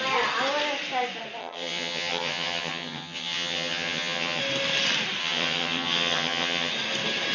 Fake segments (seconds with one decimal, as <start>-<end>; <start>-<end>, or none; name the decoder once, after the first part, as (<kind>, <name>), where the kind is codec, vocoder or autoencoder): 1.4-4.4 (vocoder, HiFi-GAN); 5.2-6.7